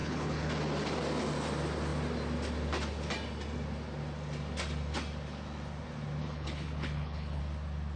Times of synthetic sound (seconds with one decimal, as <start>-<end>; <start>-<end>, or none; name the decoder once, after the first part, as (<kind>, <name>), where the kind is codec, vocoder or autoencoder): 0.0-0.5 (codec, HILCodec); 6.2-7.4

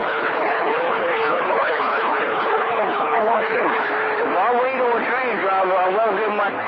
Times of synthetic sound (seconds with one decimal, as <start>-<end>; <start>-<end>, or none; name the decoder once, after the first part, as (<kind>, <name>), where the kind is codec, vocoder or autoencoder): 0.0-3.8 (codec, HILCodec)

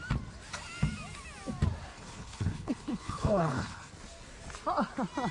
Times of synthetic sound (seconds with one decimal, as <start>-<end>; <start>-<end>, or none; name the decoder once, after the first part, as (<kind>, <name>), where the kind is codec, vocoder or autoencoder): 1.9-3.9 (codec, HILCodec)

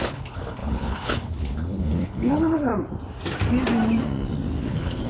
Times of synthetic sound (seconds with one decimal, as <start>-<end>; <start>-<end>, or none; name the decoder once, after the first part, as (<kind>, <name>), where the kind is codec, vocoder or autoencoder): 0.0-2.7 (codec, HILCodec); 4.6-5.1

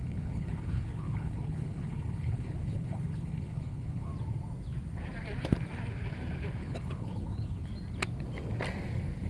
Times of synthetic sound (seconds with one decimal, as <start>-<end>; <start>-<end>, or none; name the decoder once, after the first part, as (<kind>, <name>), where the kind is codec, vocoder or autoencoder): 0.0-4.1 (codec, HILCodec); 6.6-7.7

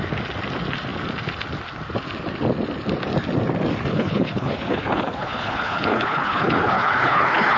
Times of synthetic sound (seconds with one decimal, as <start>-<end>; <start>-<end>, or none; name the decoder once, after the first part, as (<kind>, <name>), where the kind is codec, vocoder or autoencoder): 3.9-7.6 (codec, HILCodec)